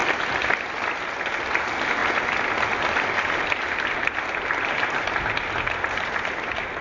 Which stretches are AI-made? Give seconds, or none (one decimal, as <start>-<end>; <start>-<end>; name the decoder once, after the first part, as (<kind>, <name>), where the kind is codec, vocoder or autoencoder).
none